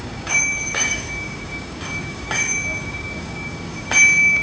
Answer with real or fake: fake